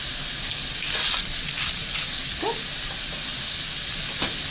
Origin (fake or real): real